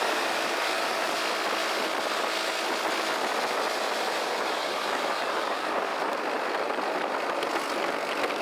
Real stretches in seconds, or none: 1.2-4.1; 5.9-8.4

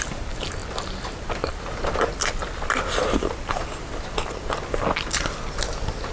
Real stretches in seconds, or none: 0.0-6.1